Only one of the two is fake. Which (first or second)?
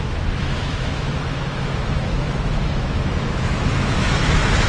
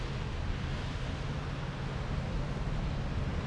first